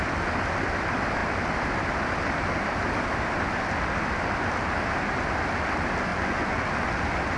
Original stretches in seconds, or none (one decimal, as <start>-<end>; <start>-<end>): 0.0-6.1; 6.6-7.4